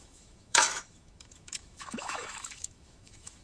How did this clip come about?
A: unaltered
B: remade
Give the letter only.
B